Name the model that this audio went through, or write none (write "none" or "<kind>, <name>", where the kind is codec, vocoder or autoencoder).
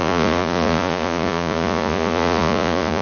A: vocoder, Vocos